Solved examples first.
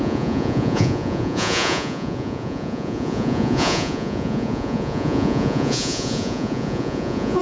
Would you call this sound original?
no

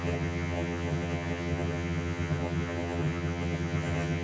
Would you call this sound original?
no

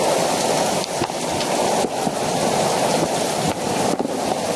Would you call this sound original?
yes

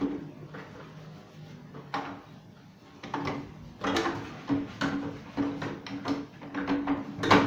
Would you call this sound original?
yes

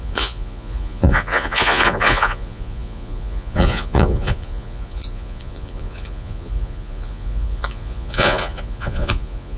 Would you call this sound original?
no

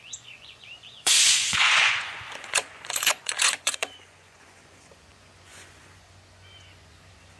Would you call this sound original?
no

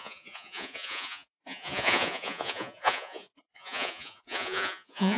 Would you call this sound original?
no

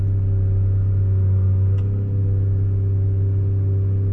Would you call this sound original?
yes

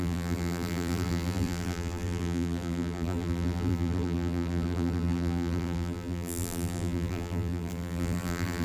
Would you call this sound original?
no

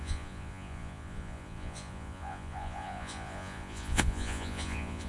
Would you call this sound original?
no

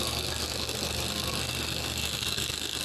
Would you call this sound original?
no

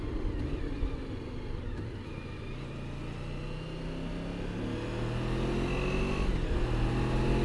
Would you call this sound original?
yes